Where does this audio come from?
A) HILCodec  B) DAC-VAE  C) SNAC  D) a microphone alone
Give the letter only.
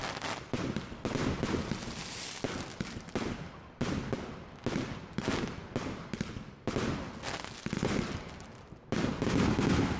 D